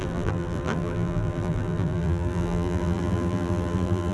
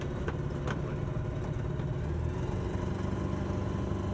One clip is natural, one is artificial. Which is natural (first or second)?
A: second